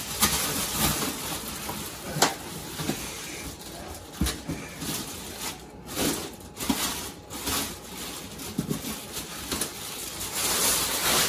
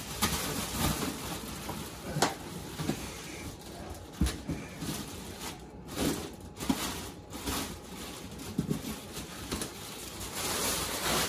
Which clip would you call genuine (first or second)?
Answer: first